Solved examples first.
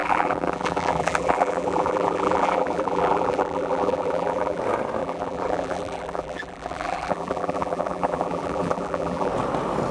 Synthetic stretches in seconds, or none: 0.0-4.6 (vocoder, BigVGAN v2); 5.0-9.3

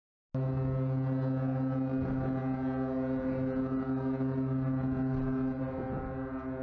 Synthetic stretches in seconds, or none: none

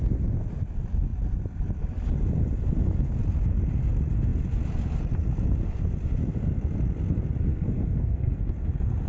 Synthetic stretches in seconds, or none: 7.5-8.4 (codec, SNAC)